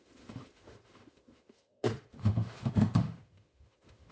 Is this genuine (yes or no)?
no